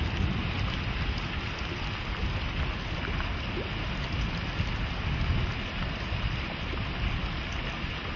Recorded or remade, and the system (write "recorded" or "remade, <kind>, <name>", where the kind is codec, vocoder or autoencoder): recorded